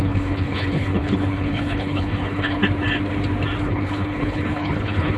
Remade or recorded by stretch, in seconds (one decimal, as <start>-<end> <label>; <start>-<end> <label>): 0.0-2.6 remade; 2.6-3.6 recorded; 3.6-5.2 remade